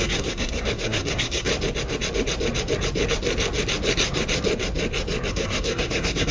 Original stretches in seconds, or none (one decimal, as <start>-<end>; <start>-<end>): 1.5-5.3

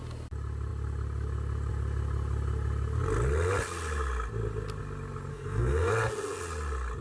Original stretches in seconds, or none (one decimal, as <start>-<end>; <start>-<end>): 0.0-5.3; 5.9-7.0

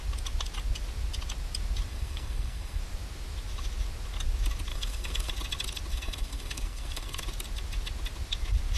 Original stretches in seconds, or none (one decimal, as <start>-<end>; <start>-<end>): 0.0-1.9; 2.8-4.7; 5.3-5.9; 7.2-8.8

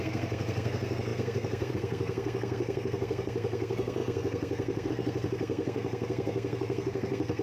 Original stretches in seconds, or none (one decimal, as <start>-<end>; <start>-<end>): none

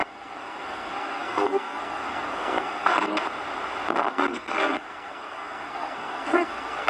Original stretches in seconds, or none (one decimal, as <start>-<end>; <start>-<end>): 3.1-4.1

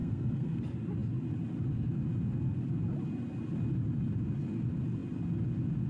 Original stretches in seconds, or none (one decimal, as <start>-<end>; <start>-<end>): 0.6-5.9

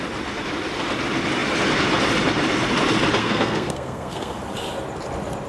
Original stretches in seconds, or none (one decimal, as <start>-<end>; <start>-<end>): 0.0-3.2; 4.4-5.5

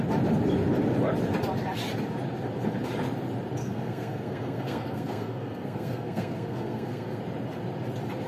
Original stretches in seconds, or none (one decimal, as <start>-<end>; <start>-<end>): 0.0-3.6; 7.2-8.3